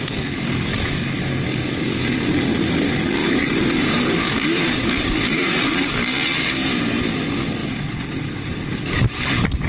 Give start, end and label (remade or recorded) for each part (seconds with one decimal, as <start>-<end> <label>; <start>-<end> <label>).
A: 0.0-3.2 recorded; 3.2-6.8 remade; 6.8-9.7 recorded